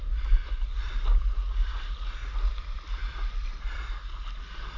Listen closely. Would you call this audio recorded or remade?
recorded